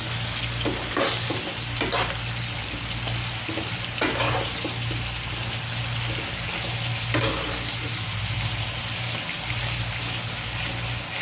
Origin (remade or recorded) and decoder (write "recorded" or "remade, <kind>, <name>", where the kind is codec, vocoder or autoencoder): recorded